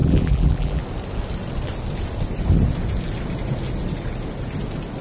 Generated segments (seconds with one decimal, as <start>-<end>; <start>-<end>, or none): 0.0-0.8